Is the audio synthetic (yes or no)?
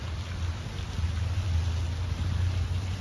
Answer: no